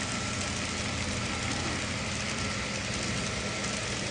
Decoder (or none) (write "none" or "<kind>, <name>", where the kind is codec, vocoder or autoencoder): none